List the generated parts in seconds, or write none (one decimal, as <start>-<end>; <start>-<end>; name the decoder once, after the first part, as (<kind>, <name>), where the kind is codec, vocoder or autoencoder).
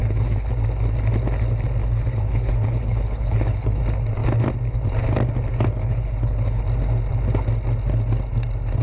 0.0-0.5 (codec, HILCodec); 1.8-3.8; 5.8-6.6